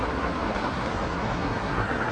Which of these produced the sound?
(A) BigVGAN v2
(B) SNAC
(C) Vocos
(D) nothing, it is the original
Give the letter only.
B